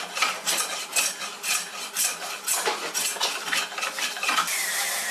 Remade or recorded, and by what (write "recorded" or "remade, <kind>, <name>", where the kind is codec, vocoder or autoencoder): remade, vocoder, BigVGAN v2